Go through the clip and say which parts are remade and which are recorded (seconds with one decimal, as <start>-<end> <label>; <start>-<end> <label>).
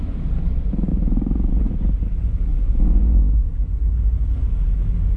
0.0-0.9 recorded; 0.9-1.7 remade; 1.7-2.5 recorded; 2.5-3.9 remade; 3.9-5.2 recorded